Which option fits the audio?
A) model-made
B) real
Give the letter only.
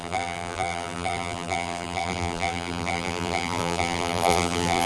A